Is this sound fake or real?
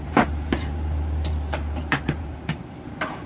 fake